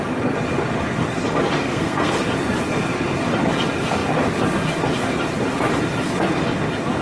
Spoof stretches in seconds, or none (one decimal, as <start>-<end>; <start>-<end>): 1.6-2.1